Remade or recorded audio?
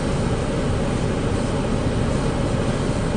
recorded